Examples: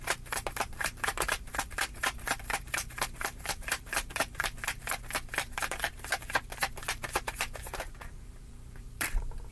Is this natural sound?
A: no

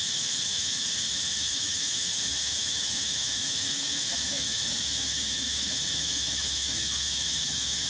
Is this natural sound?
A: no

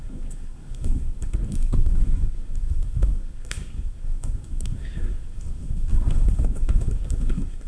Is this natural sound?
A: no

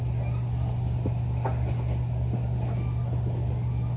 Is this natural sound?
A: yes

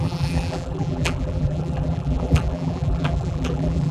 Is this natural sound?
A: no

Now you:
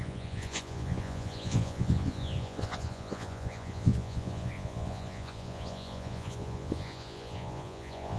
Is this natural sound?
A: no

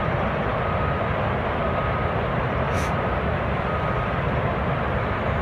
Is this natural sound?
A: yes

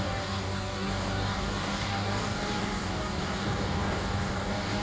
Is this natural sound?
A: no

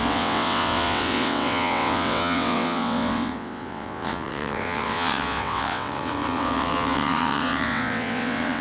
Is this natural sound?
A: no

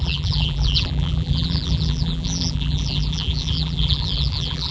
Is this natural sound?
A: no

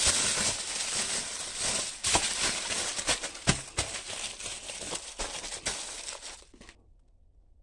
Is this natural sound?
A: yes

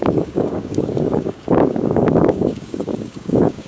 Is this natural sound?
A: no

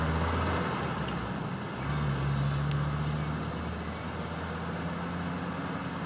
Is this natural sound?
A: yes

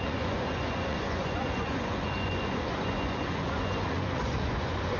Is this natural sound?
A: no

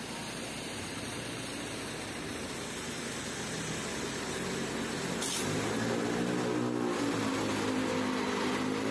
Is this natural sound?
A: yes